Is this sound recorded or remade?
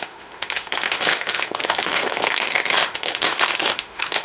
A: remade